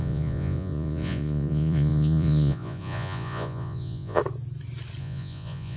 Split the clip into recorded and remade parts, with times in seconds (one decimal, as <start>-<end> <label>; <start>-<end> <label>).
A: 0.0-4.2 remade; 4.2-5.0 recorded; 5.0-5.8 remade